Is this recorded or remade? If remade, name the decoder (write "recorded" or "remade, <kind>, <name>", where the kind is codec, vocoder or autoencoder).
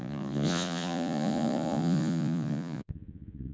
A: remade, vocoder, Vocos